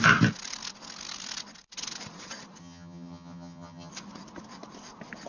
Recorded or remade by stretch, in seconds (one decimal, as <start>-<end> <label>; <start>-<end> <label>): 0.0-2.6 recorded; 2.6-3.9 remade; 3.9-5.3 recorded